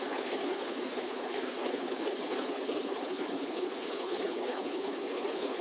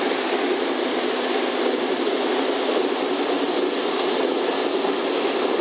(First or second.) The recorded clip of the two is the second